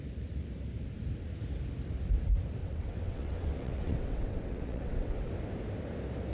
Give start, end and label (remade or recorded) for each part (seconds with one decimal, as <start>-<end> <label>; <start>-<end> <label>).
0.0-2.6 recorded; 2.6-5.3 remade; 5.3-6.3 recorded